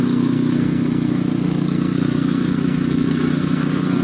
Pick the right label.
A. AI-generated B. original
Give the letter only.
A